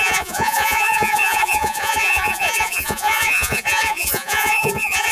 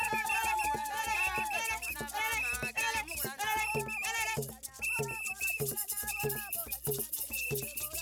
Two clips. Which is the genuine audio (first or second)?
second